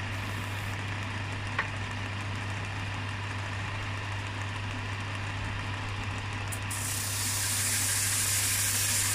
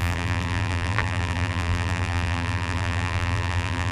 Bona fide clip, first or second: first